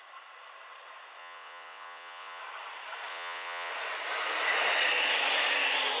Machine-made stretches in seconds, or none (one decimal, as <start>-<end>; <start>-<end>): 1.2-2.4; 3.1-3.7